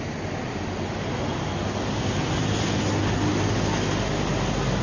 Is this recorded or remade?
recorded